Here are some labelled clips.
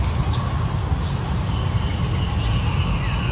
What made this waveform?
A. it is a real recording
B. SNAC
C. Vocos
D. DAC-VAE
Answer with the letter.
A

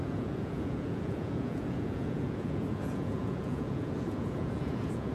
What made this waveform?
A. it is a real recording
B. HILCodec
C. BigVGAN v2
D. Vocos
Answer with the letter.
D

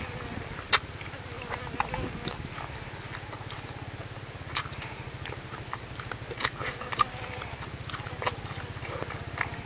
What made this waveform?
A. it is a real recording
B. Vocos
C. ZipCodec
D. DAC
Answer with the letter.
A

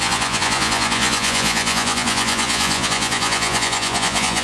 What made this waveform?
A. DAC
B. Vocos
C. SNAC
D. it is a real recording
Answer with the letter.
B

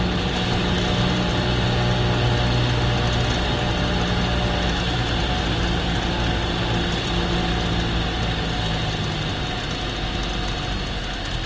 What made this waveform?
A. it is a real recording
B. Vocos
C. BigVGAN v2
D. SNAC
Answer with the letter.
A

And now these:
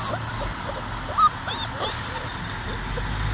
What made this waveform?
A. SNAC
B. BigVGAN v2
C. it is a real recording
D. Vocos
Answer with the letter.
C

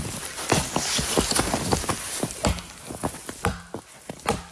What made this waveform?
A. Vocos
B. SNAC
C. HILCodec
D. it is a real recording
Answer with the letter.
D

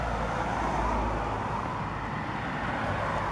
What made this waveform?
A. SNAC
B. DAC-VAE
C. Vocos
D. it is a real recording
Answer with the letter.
D